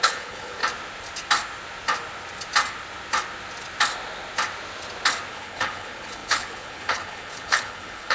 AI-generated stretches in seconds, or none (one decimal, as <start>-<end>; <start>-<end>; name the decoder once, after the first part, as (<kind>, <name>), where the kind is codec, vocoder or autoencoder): 0.0-0.6 (codec, HILCodec); 5.3-8.1